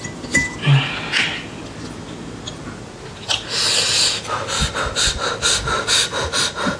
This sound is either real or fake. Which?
real